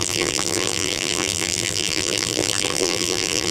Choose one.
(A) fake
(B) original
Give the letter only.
A